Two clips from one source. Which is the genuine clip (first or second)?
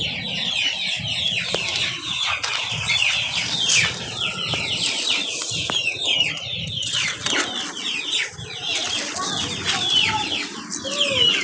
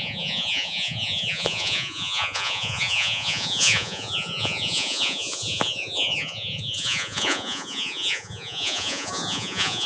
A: first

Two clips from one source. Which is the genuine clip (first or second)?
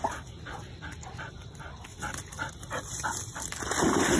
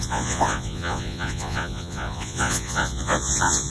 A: first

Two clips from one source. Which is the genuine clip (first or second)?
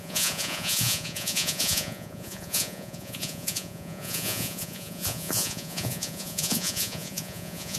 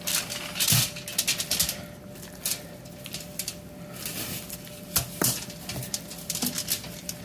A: second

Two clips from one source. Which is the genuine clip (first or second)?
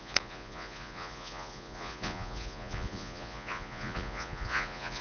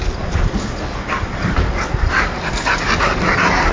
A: second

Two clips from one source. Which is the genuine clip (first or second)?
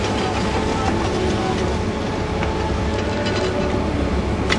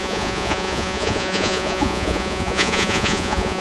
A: first